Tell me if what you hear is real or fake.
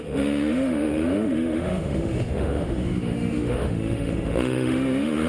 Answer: fake